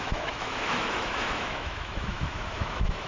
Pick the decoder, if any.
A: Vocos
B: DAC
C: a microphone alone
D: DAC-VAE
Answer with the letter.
D